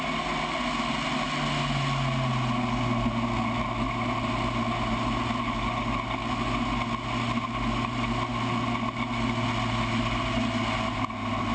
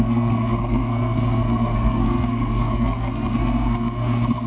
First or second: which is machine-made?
second